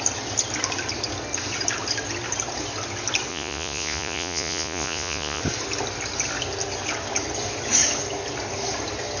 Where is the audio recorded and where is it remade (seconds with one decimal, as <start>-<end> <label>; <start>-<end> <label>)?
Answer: 0.0-3.3 recorded; 3.3-5.4 remade; 5.4-9.2 recorded